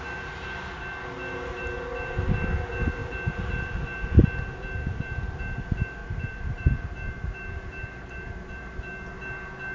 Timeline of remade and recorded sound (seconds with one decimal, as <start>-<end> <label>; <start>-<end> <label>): 0.0-6.0 recorded; 6.0-8.8 remade; 8.8-9.7 recorded